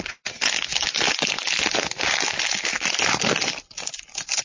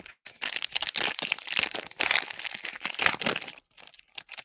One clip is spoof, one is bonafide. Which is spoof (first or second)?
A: second